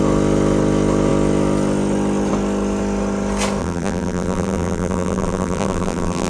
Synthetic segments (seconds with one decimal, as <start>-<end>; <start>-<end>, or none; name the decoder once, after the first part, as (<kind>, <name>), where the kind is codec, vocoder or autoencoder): 3.6-6.3 (vocoder, BigVGAN v2)